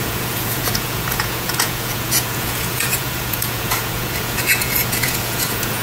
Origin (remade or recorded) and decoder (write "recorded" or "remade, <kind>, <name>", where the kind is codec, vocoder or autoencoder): remade, vocoder, Vocos